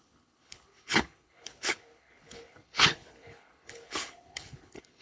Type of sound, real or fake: fake